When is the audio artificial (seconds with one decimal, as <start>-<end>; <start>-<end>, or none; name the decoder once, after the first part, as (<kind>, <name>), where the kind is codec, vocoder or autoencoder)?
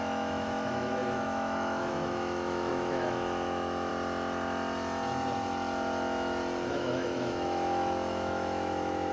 0.0-3.9 (autoencoder, DAC-VAE); 6.7-9.1